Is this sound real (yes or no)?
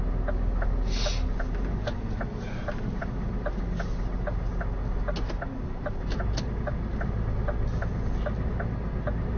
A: yes